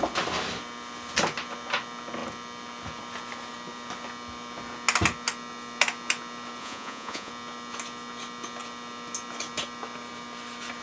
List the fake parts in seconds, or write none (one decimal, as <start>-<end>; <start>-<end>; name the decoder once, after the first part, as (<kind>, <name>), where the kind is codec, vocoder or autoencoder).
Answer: 6.6-7.3 (vocoder, Vocos)